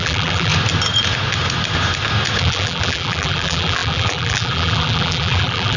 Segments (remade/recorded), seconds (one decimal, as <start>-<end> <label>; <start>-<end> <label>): 0.0-0.5 remade; 0.5-2.4 recorded; 2.4-5.8 remade

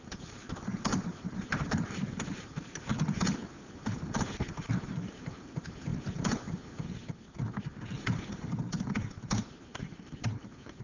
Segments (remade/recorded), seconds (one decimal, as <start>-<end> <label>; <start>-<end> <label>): 0.0-2.9 remade; 2.9-4.5 recorded; 4.5-5.9 remade; 5.9-9.6 recorded; 9.6-10.8 remade